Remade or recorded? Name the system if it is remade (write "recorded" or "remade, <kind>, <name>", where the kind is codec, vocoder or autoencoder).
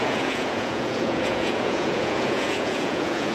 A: remade, vocoder, Vocos